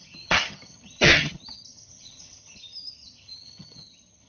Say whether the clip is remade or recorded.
remade